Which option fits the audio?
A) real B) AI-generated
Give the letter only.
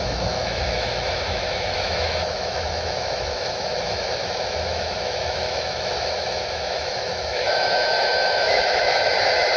B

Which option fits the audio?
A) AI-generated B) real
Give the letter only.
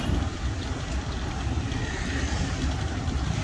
B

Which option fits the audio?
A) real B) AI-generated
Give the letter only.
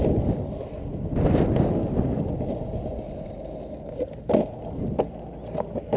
A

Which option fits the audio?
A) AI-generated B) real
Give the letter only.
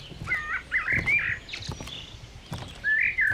B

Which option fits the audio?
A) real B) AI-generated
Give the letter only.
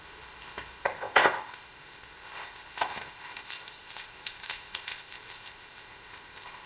B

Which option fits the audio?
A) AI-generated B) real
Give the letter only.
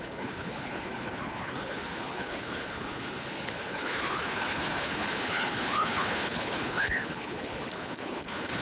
A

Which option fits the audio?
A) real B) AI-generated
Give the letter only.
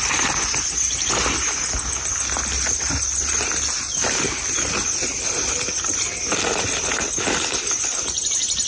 A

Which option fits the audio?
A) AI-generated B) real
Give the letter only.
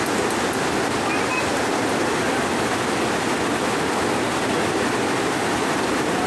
B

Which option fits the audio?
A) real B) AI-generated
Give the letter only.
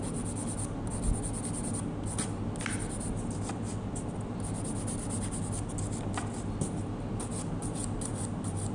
A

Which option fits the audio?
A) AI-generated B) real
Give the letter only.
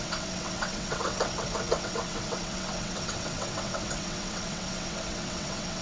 A